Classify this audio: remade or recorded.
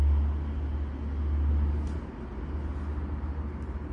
recorded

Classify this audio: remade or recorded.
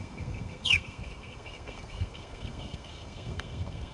remade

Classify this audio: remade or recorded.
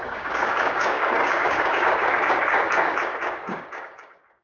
remade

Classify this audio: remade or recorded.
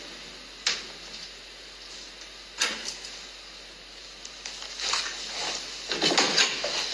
recorded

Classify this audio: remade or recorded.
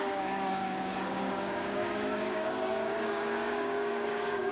remade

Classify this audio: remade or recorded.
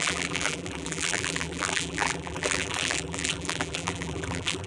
remade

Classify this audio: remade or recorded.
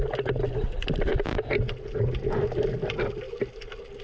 recorded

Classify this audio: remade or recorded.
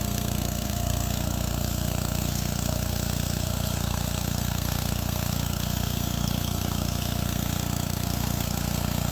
remade